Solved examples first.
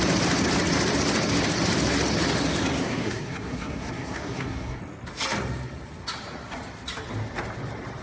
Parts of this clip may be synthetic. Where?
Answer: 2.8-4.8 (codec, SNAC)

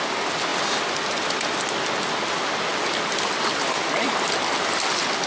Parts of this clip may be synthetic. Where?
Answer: none